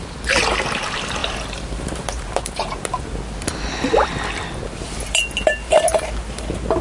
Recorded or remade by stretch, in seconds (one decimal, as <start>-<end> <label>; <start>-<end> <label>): 0.0-6.8 recorded